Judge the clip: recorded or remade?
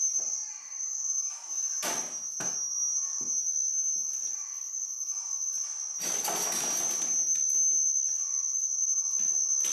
recorded